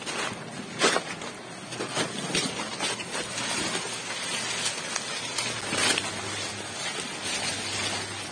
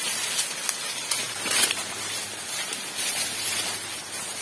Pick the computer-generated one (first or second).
second